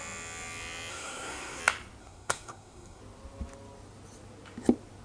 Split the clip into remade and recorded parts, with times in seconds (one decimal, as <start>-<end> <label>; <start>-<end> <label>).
0.0-0.9 recorded; 0.9-1.6 remade; 1.6-2.0 recorded; 2.0-3.0 remade; 3.0-5.0 recorded